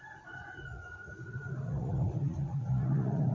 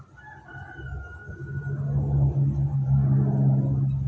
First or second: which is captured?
second